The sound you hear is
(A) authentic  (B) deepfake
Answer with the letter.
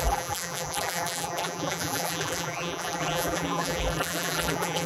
B